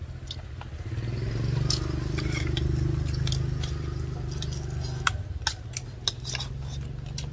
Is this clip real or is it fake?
real